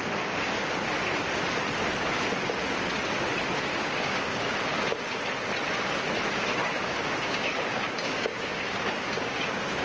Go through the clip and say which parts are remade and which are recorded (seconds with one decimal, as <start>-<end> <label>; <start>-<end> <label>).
0.0-3.7 recorded; 3.7-4.4 remade; 4.4-6.6 recorded; 6.6-9.8 remade